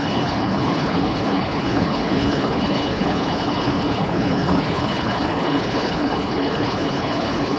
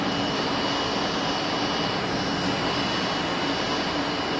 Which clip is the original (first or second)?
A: second